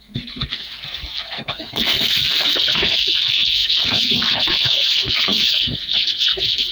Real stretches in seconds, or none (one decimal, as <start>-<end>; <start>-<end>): none